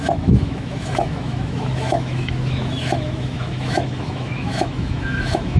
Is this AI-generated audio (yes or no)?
yes